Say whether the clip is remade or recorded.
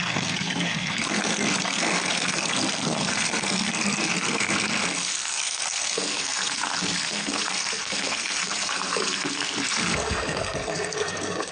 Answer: remade